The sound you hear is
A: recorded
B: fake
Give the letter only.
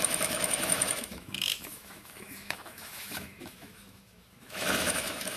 B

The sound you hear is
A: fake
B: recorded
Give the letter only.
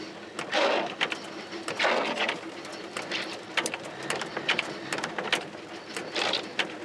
B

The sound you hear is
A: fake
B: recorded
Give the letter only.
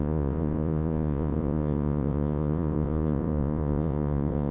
A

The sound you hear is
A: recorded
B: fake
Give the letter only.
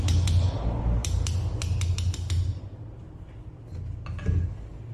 A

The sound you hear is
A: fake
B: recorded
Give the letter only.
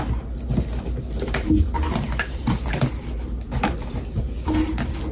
B